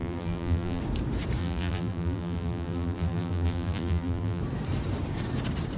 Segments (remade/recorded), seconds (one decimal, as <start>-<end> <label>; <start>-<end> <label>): 0.0-0.8 remade; 0.8-1.4 recorded; 1.4-4.4 remade; 4.4-5.8 recorded